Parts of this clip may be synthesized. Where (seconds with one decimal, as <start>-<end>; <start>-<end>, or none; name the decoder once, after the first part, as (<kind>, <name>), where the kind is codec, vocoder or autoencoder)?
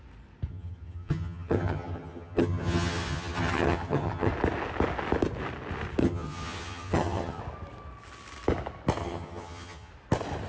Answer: 0.5-4.3 (vocoder, HiFi-GAN); 6.0-7.4; 9.0-9.9